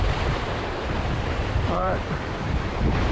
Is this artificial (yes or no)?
yes